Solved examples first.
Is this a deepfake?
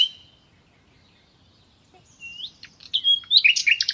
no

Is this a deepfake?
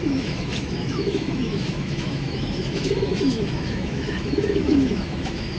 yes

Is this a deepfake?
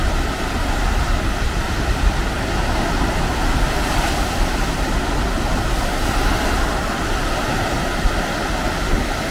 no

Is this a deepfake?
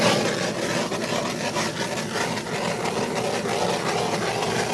no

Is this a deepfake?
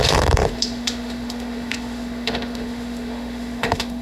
yes